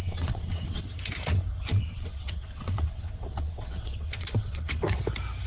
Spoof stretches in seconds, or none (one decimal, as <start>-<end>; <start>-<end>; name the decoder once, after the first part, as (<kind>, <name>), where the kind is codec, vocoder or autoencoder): 0.0-0.8 (vocoder, WaveNeXt); 1.7-5.0